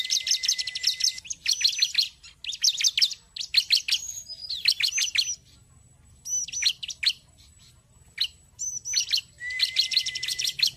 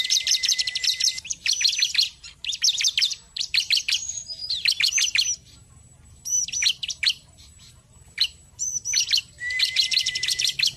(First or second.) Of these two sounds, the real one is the first